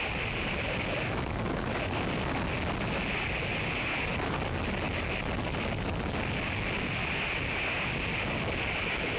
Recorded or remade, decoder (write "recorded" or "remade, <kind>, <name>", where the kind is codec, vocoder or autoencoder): recorded